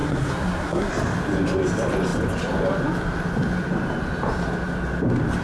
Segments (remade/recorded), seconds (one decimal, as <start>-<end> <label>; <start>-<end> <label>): 0.0-0.9 remade; 0.9-5.4 recorded